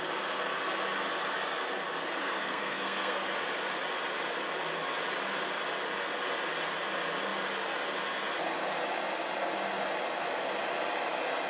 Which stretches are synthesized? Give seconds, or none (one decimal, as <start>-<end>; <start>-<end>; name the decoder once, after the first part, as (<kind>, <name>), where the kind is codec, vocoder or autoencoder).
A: 2.2-3.3 (codec, SNAC)